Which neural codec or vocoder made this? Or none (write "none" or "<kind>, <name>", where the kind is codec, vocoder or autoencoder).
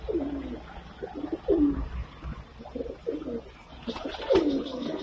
none